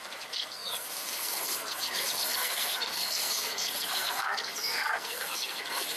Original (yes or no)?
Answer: no